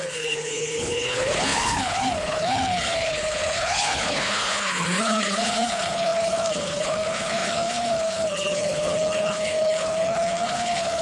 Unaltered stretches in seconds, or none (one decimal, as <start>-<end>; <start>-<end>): none